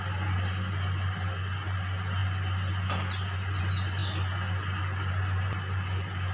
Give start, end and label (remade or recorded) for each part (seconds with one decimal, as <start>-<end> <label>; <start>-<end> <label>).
0.0-6.3 recorded